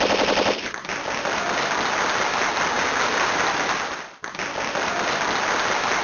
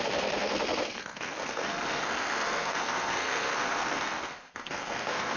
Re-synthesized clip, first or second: second